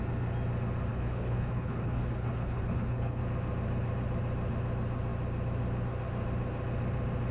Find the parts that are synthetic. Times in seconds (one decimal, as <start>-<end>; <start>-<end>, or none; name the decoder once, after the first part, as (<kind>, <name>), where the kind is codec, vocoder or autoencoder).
0.9-3.2 (codec, HILCodec)